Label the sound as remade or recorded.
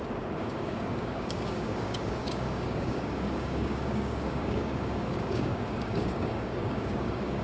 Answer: remade